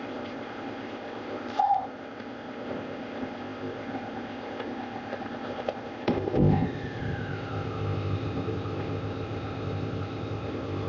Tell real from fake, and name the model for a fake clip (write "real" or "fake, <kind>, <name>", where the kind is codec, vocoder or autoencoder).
fake, codec, ZipCodec